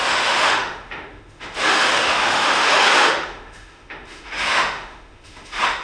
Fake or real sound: fake